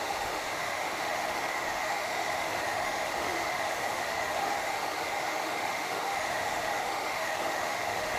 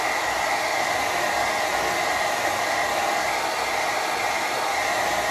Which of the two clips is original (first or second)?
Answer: second